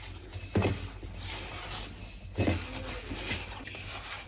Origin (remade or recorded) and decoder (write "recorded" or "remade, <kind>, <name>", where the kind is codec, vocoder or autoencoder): recorded